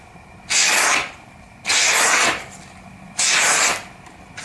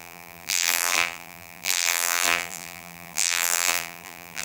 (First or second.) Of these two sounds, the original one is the first